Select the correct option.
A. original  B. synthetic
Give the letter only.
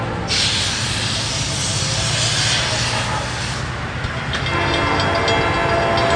A